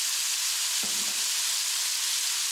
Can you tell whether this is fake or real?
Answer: real